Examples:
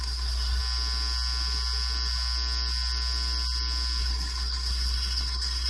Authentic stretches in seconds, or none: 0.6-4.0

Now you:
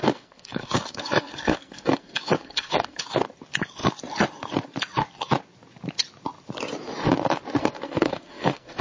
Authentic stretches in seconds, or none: 3.0-7.6

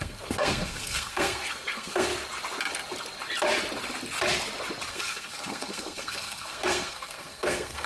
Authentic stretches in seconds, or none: 2.1-4.9

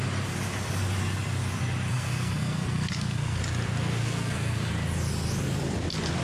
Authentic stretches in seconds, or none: 0.0-1.9; 3.4-4.0; 4.7-6.2

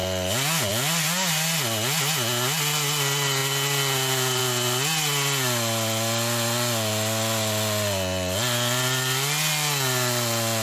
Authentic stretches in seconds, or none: 0.0-10.6